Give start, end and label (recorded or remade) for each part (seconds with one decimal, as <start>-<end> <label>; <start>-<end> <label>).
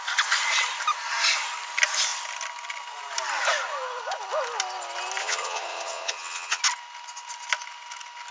0.0-5.2 recorded; 5.2-6.6 remade; 6.6-8.3 recorded